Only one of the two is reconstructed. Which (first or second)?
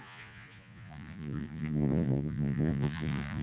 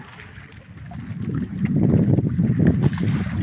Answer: first